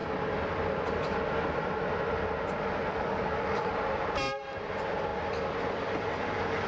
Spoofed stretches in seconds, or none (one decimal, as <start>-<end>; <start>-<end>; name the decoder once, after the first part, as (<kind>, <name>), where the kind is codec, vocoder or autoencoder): 2.9-3.7 (codec, DAC)